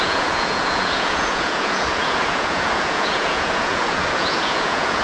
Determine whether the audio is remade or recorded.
remade